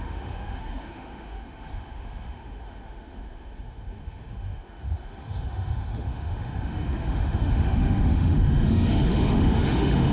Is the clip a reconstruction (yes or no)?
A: yes